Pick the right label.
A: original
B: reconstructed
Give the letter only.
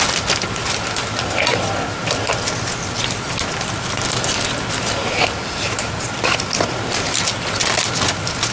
A